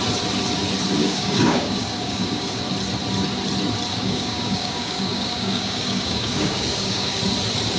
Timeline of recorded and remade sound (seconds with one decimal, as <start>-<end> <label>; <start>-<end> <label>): 0.0-1.0 recorded; 1.0-2.6 remade; 2.6-3.9 recorded; 3.9-7.2 remade; 7.2-7.8 recorded